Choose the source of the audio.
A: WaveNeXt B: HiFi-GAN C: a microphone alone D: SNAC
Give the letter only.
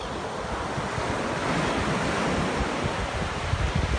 C